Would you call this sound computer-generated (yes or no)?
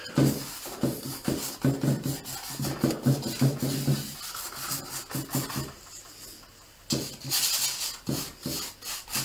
no